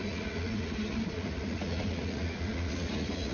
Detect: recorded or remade remade